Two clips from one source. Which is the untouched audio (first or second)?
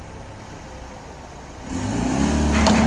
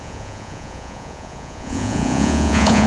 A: first